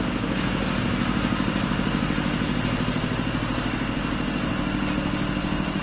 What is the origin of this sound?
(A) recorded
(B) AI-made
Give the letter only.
A